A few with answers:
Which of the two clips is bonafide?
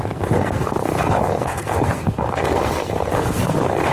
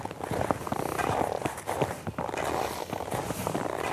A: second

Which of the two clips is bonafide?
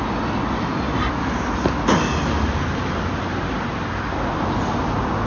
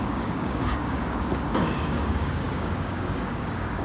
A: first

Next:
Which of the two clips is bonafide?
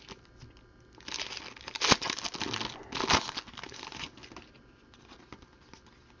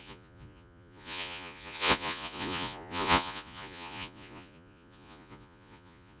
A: first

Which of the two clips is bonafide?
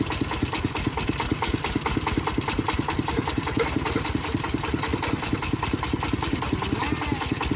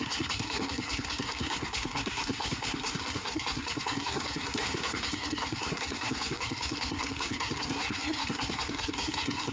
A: first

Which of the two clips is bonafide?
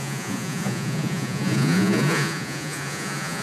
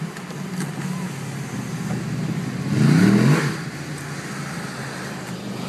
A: second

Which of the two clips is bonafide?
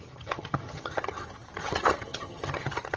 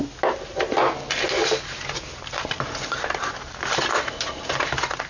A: second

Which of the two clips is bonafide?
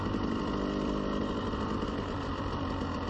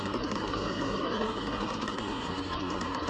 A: first